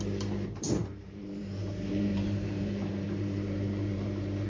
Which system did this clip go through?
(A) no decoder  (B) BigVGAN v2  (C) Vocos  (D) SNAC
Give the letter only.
B